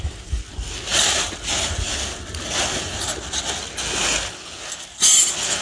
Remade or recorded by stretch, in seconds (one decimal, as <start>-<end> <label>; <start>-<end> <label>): 0.0-5.6 recorded